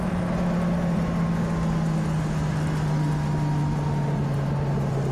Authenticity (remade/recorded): recorded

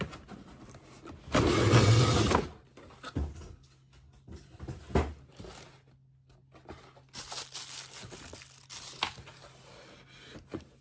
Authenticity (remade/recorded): recorded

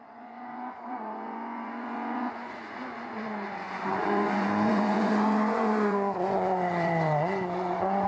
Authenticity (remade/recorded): remade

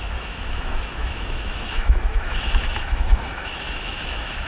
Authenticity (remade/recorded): remade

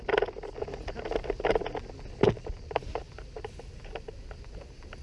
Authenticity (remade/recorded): recorded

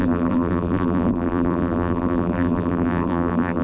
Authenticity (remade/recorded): remade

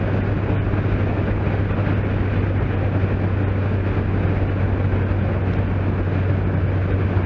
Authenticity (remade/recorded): recorded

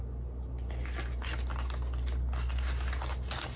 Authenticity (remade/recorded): recorded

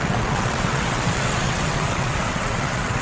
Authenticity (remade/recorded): remade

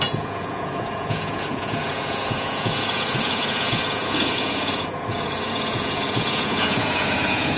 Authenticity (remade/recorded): remade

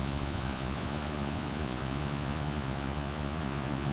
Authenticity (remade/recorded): remade